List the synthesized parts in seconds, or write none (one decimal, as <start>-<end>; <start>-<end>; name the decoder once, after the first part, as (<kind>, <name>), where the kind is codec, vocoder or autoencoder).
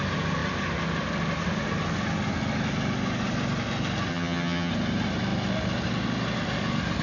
4.1-4.7 (vocoder, HiFi-GAN)